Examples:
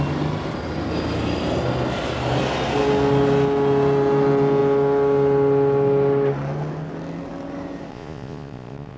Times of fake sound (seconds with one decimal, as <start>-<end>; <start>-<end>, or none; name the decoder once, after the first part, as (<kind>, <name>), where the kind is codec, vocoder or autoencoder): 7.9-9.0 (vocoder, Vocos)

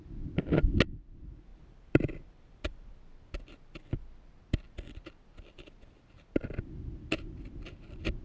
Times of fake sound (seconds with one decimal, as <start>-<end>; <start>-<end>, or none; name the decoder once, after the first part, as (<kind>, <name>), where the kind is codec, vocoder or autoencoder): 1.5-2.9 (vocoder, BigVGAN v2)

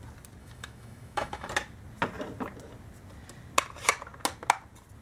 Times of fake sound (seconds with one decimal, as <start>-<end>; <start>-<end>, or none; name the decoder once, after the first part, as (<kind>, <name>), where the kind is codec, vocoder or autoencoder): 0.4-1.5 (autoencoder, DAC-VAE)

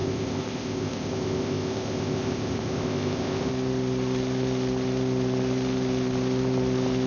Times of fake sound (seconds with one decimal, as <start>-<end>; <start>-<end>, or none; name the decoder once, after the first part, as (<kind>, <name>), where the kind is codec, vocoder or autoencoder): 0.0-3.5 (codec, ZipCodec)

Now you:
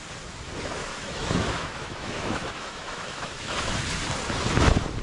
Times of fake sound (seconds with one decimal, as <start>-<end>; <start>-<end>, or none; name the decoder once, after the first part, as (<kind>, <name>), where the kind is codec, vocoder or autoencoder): 0.8-3.8 (autoencoder, DAC-VAE)

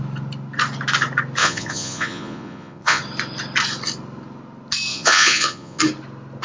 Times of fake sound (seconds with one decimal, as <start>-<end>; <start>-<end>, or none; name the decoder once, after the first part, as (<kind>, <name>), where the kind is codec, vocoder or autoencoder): 1.4-3.0 (vocoder, Vocos); 4.9-5.8

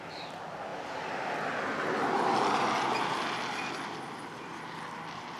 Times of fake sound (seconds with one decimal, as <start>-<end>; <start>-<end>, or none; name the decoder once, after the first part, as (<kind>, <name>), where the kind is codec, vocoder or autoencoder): none